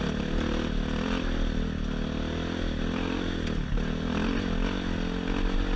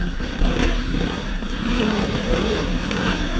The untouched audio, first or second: first